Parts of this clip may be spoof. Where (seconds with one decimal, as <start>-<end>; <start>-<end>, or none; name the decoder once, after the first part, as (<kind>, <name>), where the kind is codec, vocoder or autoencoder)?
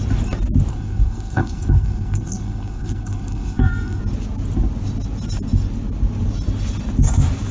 0.7-4.0 (codec, SNAC)